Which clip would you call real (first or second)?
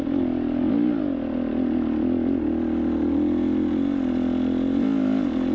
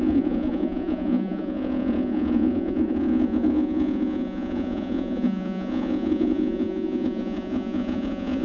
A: first